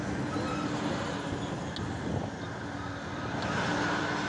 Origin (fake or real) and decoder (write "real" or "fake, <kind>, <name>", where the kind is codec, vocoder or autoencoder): real